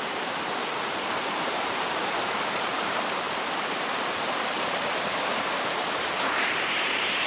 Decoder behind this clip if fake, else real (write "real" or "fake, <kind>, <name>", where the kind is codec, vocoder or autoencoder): fake, vocoder, BigVGAN v2